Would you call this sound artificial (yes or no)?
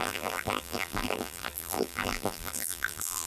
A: yes